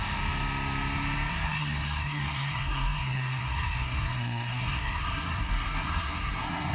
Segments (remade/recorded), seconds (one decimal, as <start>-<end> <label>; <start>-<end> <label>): 0.0-1.3 recorded; 1.3-6.7 remade